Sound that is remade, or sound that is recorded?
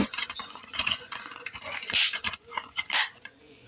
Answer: remade